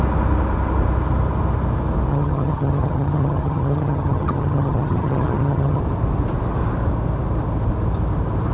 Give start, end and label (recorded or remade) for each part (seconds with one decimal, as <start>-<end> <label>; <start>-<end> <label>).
0.0-2.1 recorded; 2.1-5.8 remade; 5.8-8.5 recorded